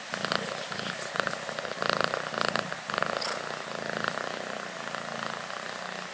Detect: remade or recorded recorded